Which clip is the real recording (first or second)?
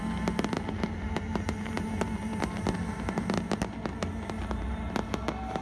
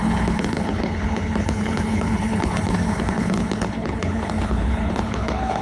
first